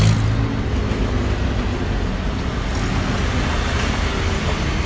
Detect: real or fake real